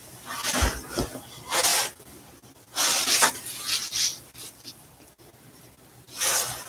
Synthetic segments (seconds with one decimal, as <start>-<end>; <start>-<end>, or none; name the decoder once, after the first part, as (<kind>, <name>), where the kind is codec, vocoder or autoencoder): 1.7-5.7 (vocoder, BigVGAN v2)